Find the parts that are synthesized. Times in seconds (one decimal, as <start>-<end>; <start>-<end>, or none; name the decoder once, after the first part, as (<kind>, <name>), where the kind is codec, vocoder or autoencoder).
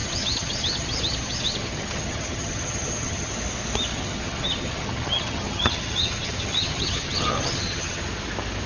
0.0-3.3 (vocoder, HiFi-GAN); 3.9-8.0